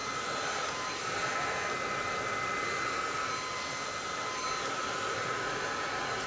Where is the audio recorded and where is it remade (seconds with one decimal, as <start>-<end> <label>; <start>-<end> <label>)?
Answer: 0.0-5.2 recorded; 5.2-6.3 remade